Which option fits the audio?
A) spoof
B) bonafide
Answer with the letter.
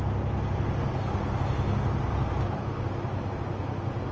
B